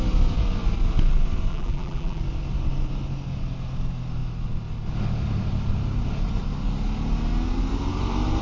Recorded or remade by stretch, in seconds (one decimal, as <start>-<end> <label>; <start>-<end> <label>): 0.0-1.5 recorded; 1.5-2.2 remade; 2.2-8.4 recorded